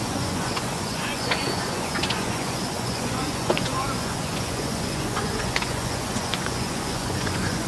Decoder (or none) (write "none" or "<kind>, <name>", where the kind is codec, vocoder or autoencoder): vocoder, Vocos